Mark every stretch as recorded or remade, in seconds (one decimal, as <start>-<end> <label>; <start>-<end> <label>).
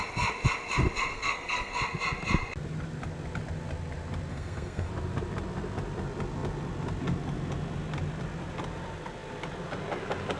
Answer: 0.0-1.1 recorded; 1.1-1.7 remade; 1.7-4.3 recorded; 4.3-4.9 remade; 4.9-10.4 recorded